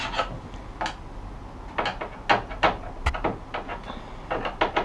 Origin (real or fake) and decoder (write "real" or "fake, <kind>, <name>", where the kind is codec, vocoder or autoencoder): real